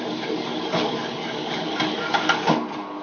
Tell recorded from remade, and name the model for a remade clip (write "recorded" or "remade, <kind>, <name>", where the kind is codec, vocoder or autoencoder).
remade, codec, DAC